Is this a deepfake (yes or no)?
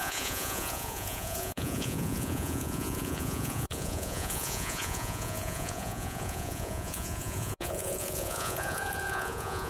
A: yes